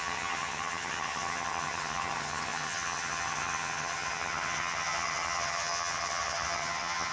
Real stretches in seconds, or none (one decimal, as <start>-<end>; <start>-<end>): none